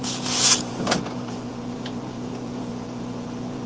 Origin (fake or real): fake